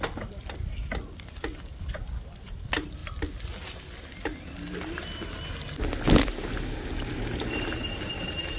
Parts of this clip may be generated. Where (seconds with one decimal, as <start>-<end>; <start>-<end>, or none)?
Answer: 3.0-5.3